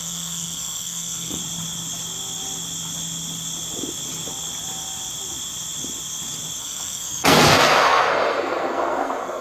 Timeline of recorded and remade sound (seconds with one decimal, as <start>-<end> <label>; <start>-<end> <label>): 0.0-1.4 remade; 1.4-6.6 recorded; 6.6-9.4 remade